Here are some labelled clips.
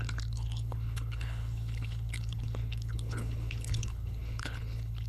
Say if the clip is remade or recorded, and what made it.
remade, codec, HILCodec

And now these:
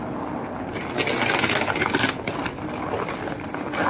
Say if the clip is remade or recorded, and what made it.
recorded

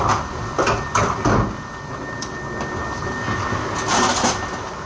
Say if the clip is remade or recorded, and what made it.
recorded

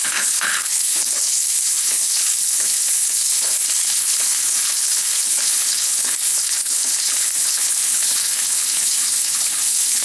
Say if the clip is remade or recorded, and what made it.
remade, codec, HILCodec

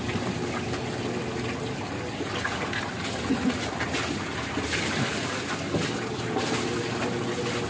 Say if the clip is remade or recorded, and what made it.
recorded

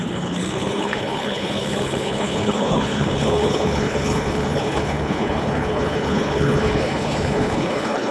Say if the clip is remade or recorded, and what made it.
remade, codec, HILCodec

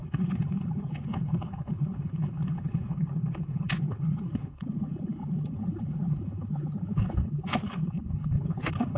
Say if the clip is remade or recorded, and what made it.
remade, codec, HILCodec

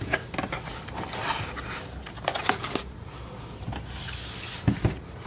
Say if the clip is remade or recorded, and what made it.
recorded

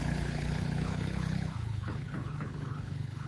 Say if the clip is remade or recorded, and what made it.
remade, codec, HILCodec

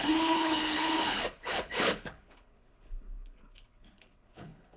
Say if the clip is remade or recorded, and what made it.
remade, codec, HILCodec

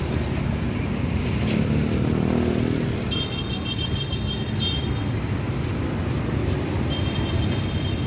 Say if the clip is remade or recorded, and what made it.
recorded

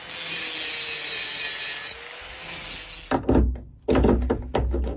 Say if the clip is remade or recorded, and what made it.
recorded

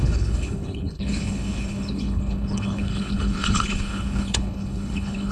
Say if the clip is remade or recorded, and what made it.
remade, codec, HILCodec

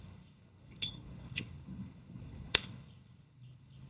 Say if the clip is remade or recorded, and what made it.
remade, codec, HILCodec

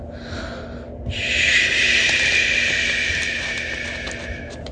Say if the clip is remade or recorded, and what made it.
recorded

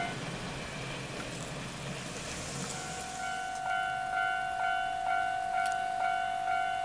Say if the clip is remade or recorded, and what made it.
recorded